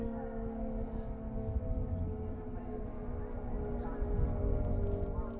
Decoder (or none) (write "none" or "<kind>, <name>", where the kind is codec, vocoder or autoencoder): none